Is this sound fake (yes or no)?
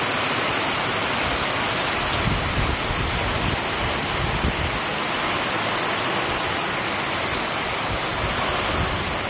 no